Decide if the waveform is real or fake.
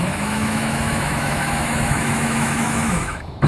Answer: fake